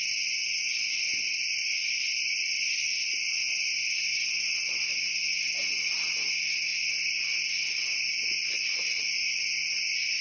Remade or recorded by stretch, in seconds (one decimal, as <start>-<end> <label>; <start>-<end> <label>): 0.0-10.2 recorded